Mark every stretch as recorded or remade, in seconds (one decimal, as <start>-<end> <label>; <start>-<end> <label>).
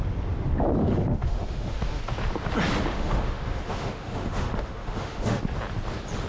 0.0-0.8 recorded; 0.8-2.0 remade; 2.0-2.9 recorded; 2.9-5.4 remade; 5.4-6.3 recorded